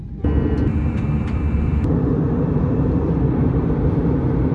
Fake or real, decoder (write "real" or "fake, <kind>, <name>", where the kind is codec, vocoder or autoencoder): fake, vocoder, BigVGAN v2